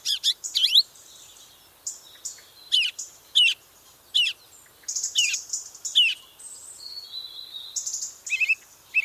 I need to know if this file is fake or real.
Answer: real